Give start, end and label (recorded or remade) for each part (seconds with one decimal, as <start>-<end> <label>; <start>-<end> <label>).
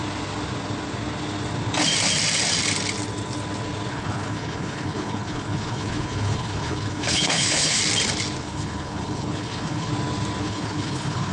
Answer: 0.0-3.9 recorded; 3.9-7.8 remade; 7.8-8.4 recorded; 8.4-9.9 remade; 9.9-10.4 recorded; 10.4-11.3 remade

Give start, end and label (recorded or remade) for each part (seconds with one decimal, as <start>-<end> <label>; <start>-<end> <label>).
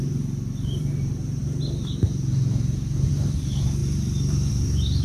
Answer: 0.0-5.0 remade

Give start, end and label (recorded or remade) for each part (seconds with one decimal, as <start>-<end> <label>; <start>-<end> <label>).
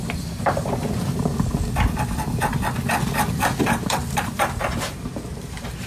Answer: 0.0-1.3 remade; 1.3-3.4 recorded; 3.4-5.9 remade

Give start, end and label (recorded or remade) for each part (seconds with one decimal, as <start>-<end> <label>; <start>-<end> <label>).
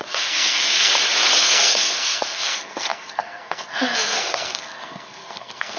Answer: 0.0-0.9 remade; 0.9-1.4 recorded; 1.4-5.8 remade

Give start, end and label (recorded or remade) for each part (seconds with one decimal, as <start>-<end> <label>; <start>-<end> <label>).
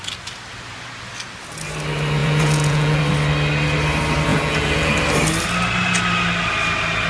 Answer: 0.0-2.2 recorded; 2.2-3.0 remade; 3.0-4.3 recorded; 4.3-4.9 remade; 4.9-7.1 recorded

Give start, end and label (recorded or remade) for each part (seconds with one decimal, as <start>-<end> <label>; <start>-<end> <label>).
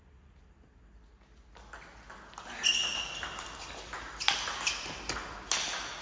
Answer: 0.0-6.0 recorded